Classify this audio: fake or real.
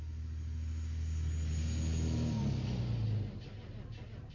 real